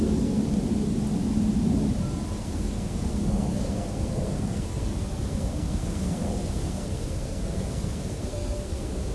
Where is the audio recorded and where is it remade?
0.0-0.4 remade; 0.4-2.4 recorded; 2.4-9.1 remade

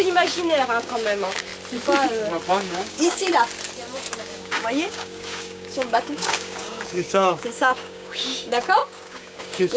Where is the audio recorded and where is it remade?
0.0-1.5 remade; 1.5-2.5 recorded; 2.5-3.3 remade; 3.3-4.2 recorded; 4.2-9.8 remade

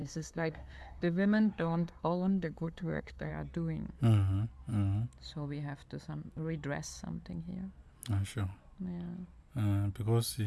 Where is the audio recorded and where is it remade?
0.0-3.3 remade; 3.3-10.5 recorded

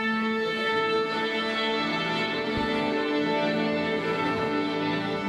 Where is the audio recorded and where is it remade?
0.0-1.9 remade; 1.9-2.5 recorded; 2.5-5.3 remade

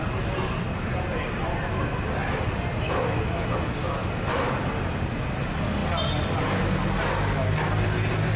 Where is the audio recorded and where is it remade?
0.0-8.4 recorded